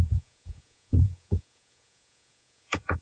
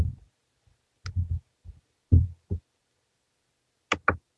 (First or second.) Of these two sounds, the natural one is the second